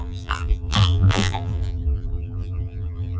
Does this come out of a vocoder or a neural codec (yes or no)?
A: yes